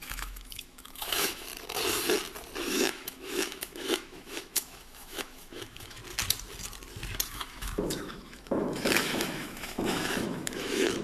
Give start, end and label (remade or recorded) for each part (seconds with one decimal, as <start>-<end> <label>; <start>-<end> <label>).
0.0-1.5 remade; 1.5-2.7 recorded; 2.7-6.0 remade; 6.0-7.3 recorded; 7.3-11.0 remade